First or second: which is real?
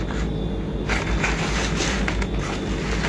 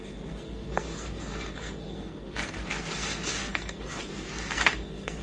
first